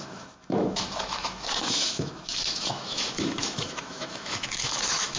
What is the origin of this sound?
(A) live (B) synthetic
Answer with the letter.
B